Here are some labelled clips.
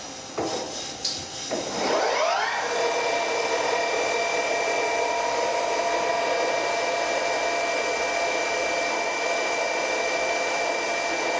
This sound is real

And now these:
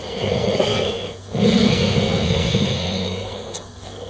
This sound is fake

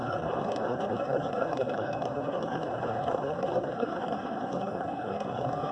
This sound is fake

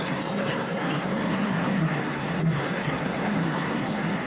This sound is fake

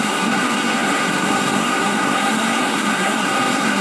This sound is fake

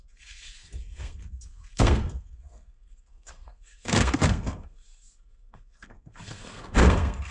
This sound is fake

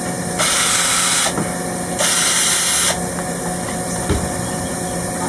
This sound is real